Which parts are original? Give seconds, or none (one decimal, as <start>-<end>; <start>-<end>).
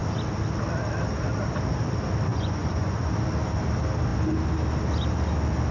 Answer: 0.0-2.3; 3.1-5.7